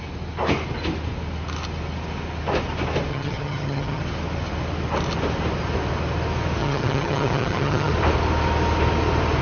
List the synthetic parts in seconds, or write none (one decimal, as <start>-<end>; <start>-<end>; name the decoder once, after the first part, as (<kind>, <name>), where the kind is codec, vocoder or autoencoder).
3.1-4.0 (vocoder, HiFi-GAN); 6.6-7.9